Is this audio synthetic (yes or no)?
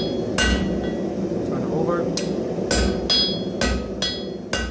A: no